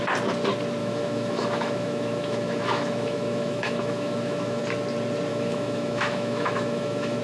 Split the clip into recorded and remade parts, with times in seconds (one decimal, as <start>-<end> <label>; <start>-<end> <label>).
0.0-0.8 recorded; 0.8-4.6 remade; 4.6-5.3 recorded; 5.3-7.2 remade